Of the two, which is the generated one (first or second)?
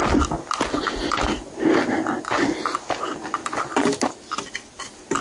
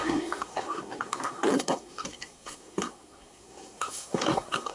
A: second